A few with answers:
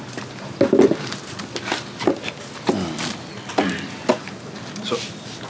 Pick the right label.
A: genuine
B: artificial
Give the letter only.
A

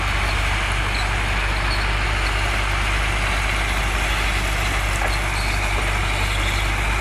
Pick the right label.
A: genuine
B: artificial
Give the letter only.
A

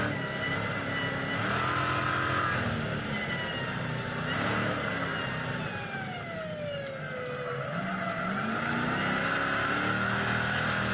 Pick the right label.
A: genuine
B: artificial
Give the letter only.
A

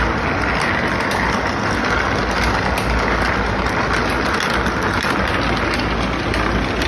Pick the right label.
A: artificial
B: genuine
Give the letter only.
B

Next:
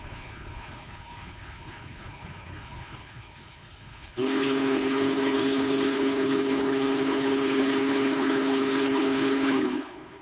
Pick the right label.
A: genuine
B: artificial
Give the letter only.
B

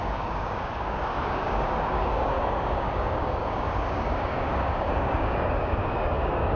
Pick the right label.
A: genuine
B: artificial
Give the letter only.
B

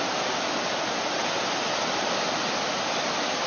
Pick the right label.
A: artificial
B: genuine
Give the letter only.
B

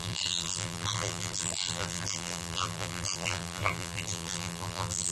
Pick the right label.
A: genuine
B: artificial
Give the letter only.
B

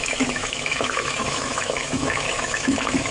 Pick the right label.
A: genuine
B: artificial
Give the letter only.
B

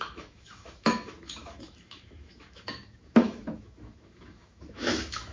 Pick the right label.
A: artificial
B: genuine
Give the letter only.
A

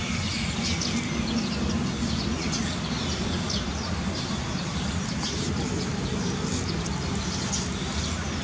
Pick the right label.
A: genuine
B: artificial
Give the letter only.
A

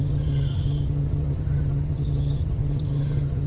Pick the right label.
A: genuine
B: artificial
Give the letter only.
B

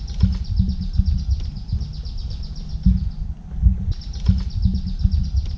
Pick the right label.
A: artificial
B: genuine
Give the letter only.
B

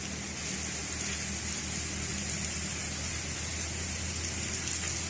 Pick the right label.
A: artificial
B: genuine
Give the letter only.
B